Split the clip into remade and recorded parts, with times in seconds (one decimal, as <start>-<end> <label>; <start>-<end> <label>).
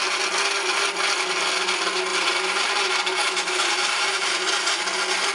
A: 0.0-2.1 recorded; 2.1-4.4 remade; 4.4-5.3 recorded